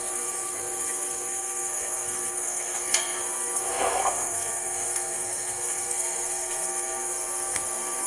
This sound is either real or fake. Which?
fake